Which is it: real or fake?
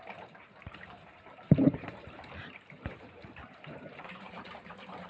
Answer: fake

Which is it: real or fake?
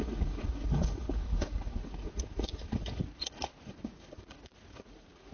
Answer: fake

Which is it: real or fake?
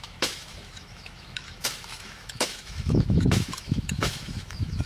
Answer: fake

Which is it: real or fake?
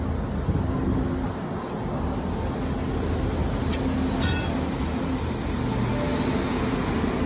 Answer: real